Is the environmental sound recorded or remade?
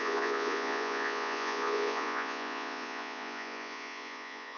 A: remade